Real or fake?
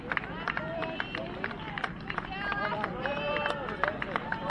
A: fake